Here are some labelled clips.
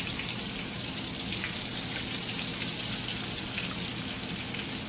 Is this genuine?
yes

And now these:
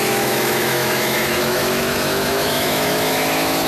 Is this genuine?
no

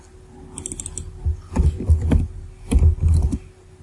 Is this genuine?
yes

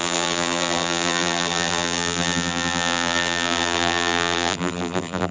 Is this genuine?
no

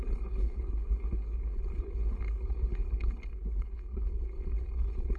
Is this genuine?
no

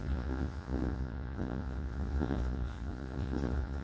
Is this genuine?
no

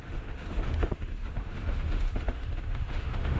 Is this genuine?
no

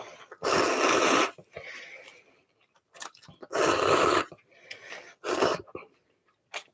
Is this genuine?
yes